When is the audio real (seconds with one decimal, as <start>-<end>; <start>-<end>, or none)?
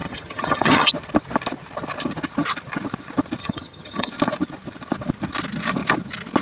0.9-3.4; 4.1-6.4